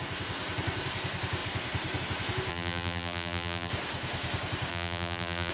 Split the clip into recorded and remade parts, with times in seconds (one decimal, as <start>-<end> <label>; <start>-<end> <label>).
0.0-2.5 recorded; 2.5-3.7 remade; 3.7-4.7 recorded; 4.7-5.5 remade